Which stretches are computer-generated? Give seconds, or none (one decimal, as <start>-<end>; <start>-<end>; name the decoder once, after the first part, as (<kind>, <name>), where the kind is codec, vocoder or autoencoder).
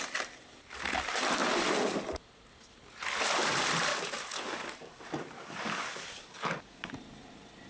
3.9-6.9 (codec, DAC)